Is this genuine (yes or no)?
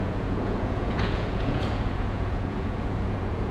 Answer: no